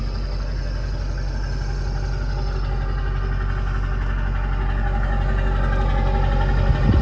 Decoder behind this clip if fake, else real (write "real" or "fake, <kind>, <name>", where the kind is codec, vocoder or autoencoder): real